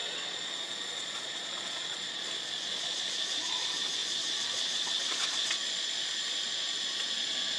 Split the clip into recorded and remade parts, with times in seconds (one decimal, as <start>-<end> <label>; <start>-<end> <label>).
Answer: 0.0-7.6 remade